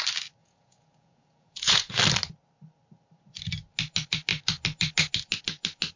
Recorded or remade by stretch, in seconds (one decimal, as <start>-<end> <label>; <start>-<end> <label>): 0.0-0.4 recorded; 0.4-2.0 remade; 2.0-6.0 recorded